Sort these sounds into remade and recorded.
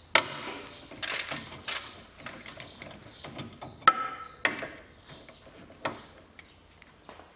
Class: recorded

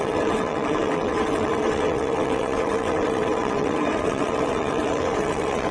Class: remade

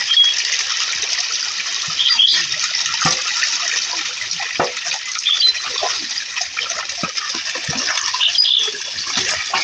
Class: recorded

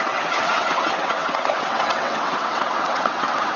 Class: remade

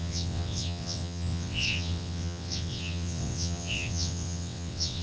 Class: remade